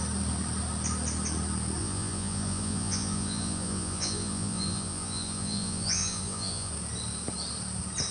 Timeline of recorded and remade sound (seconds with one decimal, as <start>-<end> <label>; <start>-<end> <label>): 0.0-1.8 recorded; 1.8-6.7 remade; 6.7-8.1 recorded